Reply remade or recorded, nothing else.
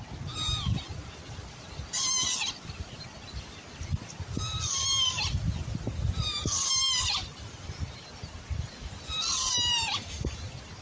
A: recorded